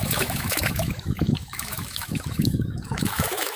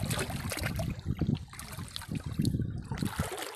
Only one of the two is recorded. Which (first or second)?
second